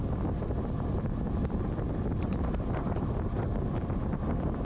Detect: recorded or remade recorded